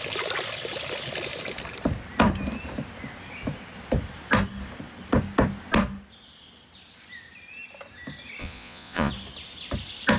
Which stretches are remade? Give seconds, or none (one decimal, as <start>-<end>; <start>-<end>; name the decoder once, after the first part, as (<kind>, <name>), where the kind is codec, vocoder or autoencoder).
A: 8.4-9.1 (vocoder, Vocos)